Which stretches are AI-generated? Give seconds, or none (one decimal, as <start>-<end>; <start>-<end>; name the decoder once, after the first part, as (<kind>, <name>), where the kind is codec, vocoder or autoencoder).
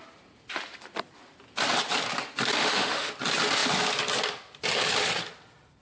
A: 2.6-3.1 (autoencoder, DAC-VAE)